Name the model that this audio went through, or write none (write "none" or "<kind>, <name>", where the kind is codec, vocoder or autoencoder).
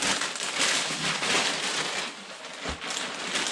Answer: none